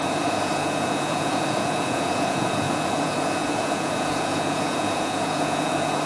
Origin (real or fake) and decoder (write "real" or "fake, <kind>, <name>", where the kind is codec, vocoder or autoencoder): fake, vocoder, Vocos